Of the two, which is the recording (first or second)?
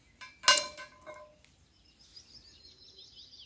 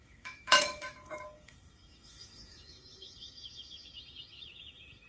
first